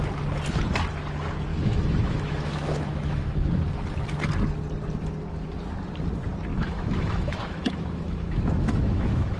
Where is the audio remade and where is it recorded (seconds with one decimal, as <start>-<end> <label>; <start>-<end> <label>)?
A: 0.0-1.5 recorded; 1.5-3.5 remade; 3.5-6.5 recorded; 6.5-9.4 remade